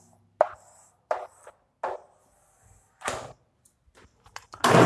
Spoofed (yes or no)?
no